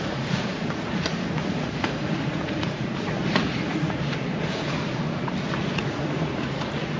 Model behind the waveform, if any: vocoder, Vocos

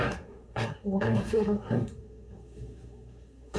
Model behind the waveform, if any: codec, SNAC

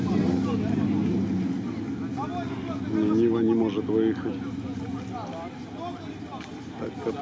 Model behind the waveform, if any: none